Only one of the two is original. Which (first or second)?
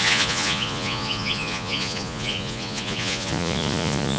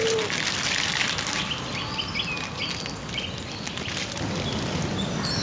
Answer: second